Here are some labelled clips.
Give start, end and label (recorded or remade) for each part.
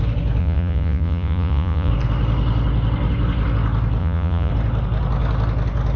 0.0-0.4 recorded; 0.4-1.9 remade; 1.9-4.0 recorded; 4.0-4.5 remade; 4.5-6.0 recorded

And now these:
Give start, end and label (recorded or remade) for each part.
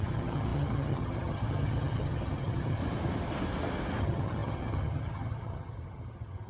0.0-2.8 remade; 2.8-4.0 recorded; 4.0-6.5 remade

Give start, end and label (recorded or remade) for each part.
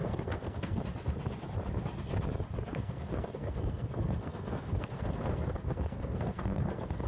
0.0-0.8 remade; 0.8-2.7 recorded; 2.7-7.1 remade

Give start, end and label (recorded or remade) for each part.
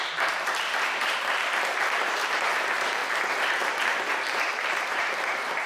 0.0-3.0 remade; 3.0-4.1 recorded; 4.1-5.7 remade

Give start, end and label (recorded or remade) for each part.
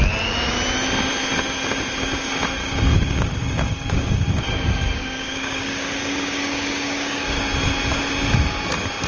0.0-2.6 recorded; 2.6-7.4 remade; 7.4-9.1 recorded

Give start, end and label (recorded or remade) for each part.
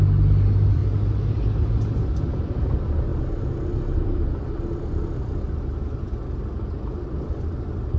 0.0-0.8 remade; 0.8-1.7 recorded; 1.7-8.0 remade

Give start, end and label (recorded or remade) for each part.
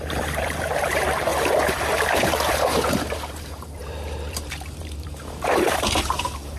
0.0-6.6 remade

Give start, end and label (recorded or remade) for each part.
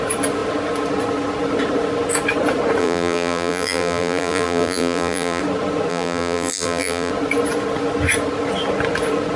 0.0-2.8 recorded; 2.8-5.4 remade; 5.4-5.9 recorded; 5.9-7.1 remade; 7.1-9.4 recorded